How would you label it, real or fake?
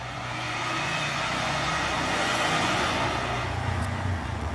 fake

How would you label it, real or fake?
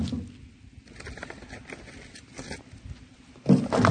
real